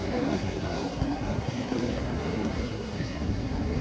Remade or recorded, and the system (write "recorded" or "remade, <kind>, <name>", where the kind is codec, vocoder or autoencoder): remade, codec, SNAC